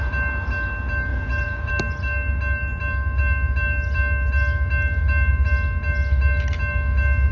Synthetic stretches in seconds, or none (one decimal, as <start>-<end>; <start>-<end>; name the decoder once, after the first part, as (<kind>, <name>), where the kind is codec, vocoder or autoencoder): 1.1-1.7 (vocoder, Vocos)

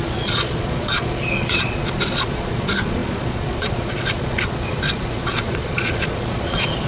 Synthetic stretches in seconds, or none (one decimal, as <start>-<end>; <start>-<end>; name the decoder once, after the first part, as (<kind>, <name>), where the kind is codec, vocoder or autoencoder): 0.0-6.9 (vocoder, Vocos)

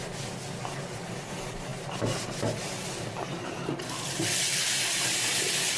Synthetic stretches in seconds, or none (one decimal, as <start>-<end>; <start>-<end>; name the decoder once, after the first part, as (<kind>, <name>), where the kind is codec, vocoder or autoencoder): none

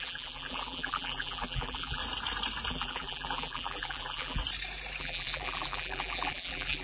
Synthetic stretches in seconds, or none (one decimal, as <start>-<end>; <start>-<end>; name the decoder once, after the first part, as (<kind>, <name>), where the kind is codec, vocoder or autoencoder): 0.0-2.0 (vocoder, BigVGAN v2); 2.7-4.4; 5.0-6.8

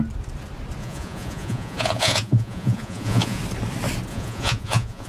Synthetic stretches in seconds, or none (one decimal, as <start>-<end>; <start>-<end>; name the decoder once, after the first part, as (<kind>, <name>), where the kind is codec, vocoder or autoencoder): 0.8-3.4 (vocoder, Vocos); 4.1-5.1